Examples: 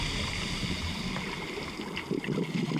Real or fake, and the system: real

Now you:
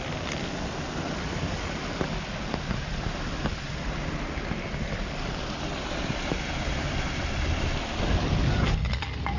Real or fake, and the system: real